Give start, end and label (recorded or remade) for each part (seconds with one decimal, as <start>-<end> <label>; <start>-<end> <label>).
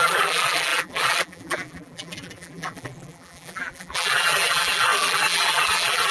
0.0-6.1 remade